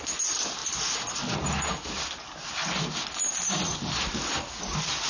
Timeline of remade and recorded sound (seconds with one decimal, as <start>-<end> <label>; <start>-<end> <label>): 0.0-5.1 recorded